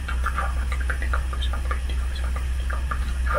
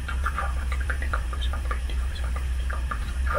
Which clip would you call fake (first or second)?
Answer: second